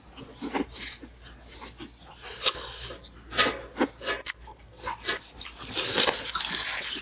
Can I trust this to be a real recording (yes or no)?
yes